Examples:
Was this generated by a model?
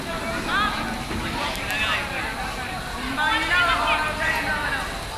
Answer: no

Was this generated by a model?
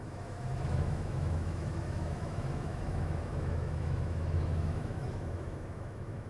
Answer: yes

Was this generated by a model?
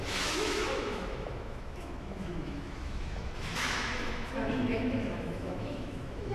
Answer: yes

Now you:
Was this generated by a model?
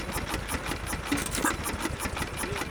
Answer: no